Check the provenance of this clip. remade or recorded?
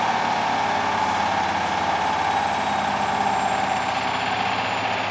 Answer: recorded